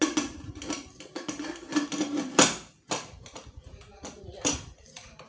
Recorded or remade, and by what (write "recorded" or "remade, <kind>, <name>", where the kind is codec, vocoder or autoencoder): recorded